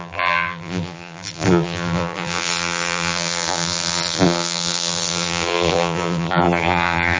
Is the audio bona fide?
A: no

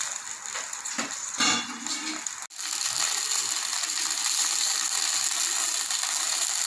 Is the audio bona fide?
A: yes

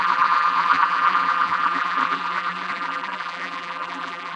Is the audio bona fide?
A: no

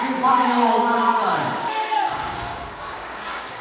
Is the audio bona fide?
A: no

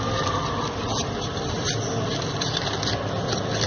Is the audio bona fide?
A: yes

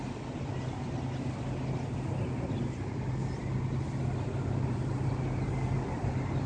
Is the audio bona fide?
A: yes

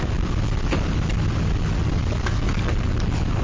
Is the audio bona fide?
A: yes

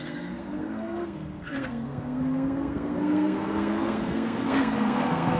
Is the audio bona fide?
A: no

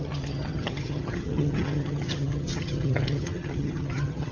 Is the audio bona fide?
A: no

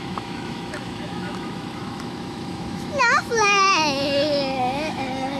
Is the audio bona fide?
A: no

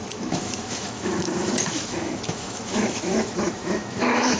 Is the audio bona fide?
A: no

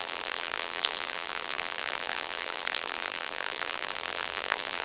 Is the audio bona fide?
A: no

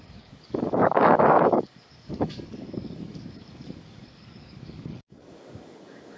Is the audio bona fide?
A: no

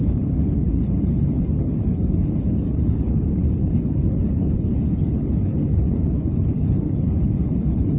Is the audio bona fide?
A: no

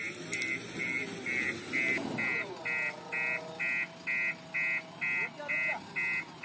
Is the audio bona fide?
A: yes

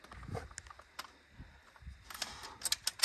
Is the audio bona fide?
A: yes